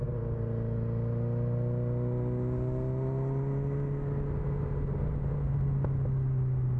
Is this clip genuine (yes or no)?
yes